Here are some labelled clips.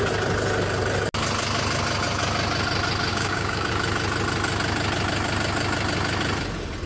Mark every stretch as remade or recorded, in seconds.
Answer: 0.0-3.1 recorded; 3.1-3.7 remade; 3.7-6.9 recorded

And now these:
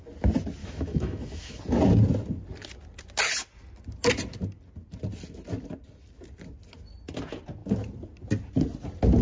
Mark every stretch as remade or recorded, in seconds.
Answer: 0.0-0.6 recorded; 0.6-1.6 remade; 1.6-9.2 recorded

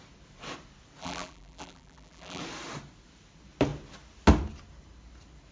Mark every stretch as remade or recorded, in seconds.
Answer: 0.0-1.0 recorded; 1.0-2.4 remade; 2.4-5.5 recorded